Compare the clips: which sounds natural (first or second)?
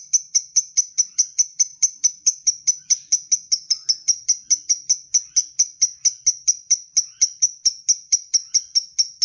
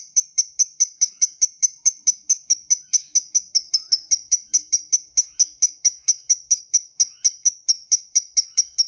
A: first